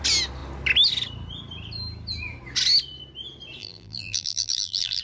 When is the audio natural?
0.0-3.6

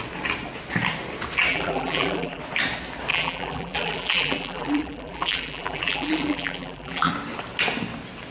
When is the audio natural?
0.0-1.5; 2.4-3.1; 7.1-8.3